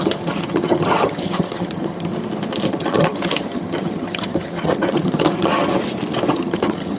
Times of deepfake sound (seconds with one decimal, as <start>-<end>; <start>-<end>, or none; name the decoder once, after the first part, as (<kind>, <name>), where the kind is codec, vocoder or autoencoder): 0.0-2.1 (vocoder, HiFi-GAN); 2.7-5.7; 6.3-7.0